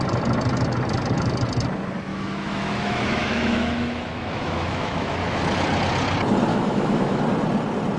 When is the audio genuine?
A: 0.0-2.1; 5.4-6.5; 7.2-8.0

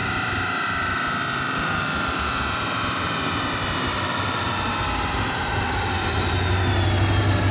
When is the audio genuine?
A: 0.0-7.5